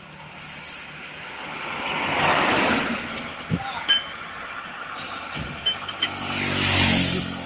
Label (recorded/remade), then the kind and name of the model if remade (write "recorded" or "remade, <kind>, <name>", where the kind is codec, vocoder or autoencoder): recorded